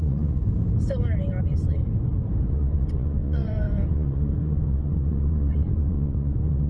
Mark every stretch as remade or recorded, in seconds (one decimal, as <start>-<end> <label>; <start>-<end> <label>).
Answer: 0.0-0.4 remade; 0.4-1.4 recorded; 1.4-1.8 remade; 1.8-2.5 recorded; 2.5-6.7 remade